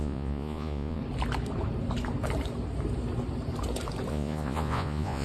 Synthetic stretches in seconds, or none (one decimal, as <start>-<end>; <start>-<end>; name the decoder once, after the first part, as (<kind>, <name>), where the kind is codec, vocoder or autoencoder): 0.0-1.0 (vocoder, Vocos); 4.1-5.2